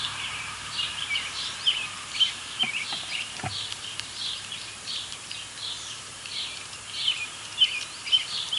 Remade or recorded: remade